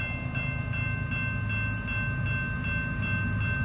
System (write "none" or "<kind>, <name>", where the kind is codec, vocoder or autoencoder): none